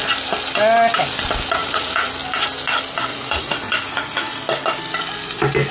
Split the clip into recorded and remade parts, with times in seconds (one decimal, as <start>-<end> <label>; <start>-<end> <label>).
0.0-1.6 recorded; 1.6-2.1 remade; 2.1-3.1 recorded; 3.1-4.4 remade; 4.4-5.7 recorded